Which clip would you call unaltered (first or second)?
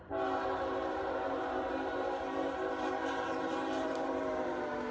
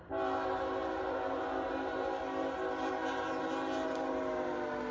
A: second